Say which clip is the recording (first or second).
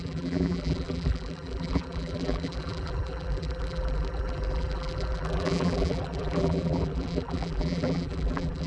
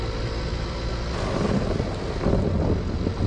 second